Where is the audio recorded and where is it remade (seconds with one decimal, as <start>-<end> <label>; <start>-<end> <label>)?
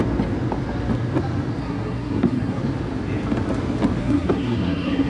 0.0-1.6 recorded; 1.6-2.6 remade; 2.6-4.0 recorded; 4.0-5.1 remade